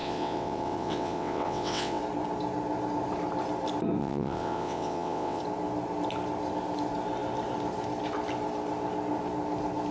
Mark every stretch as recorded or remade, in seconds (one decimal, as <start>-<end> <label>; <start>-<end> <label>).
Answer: 0.0-2.0 remade; 2.0-4.0 recorded; 4.0-5.4 remade; 5.4-9.9 recorded